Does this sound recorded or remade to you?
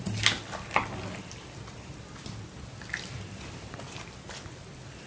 recorded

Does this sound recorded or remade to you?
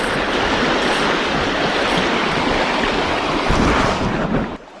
recorded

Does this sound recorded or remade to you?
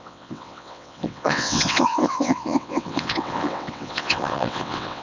remade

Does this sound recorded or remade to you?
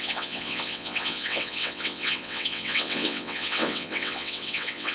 remade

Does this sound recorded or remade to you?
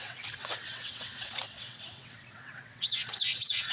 remade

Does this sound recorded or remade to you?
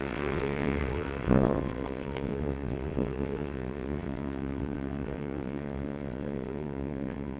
remade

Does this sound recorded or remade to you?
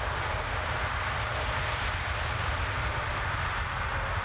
recorded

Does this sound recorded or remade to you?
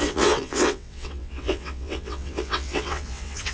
remade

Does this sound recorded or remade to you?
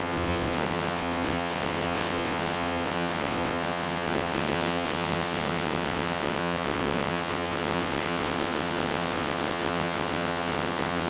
remade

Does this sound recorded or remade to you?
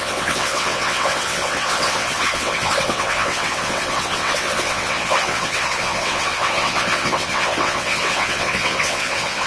remade